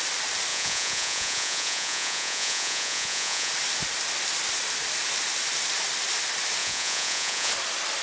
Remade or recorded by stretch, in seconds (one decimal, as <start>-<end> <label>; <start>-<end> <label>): 0.0-0.5 recorded; 0.5-3.5 remade; 3.5-6.6 recorded; 6.6-7.5 remade; 7.5-8.0 recorded